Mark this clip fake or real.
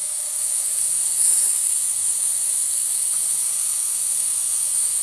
fake